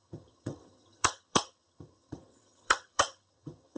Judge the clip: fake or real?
fake